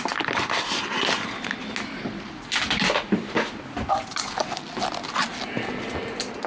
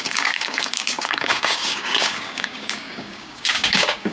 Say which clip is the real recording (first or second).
first